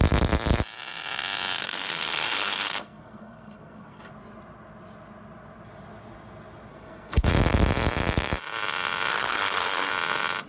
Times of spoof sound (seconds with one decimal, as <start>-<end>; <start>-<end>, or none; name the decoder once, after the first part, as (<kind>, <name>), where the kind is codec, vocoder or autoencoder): 1.6-4.1 (codec, SNAC); 6.7-7.3; 9.1-9.9

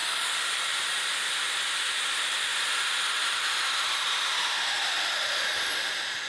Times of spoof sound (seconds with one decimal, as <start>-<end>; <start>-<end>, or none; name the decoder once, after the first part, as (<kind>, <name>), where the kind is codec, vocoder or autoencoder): 2.5-5.1 (vocoder, BigVGAN v2)

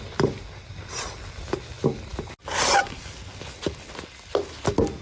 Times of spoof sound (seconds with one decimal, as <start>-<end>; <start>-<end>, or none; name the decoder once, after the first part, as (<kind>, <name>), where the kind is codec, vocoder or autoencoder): none

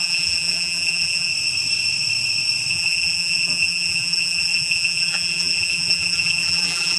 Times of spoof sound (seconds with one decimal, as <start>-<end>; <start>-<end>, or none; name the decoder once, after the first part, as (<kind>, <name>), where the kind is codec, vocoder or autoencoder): 0.0-1.3 (vocoder, BigVGAN v2); 2.7-7.0

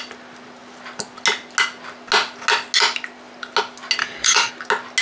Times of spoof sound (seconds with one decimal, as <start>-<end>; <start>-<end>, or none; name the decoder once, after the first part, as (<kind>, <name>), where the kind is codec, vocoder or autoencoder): 4.0-4.5 (codec, DAC)

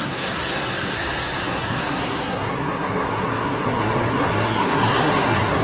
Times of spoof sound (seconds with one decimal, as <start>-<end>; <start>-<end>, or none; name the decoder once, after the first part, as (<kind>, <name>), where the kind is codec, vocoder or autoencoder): 0.0-5.6 (codec, SNAC)